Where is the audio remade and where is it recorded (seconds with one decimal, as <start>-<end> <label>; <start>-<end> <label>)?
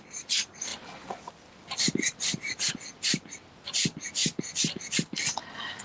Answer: 0.0-5.8 recorded